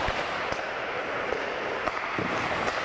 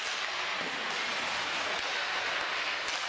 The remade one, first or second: first